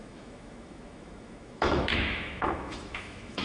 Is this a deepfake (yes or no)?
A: yes